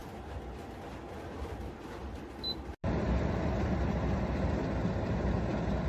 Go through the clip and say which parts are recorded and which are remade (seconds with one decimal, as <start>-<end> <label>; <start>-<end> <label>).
0.0-5.9 recorded